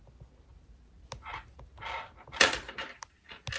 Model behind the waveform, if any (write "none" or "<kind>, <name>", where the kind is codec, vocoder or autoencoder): none